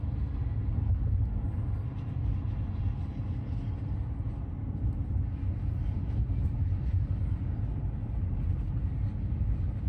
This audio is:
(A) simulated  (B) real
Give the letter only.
B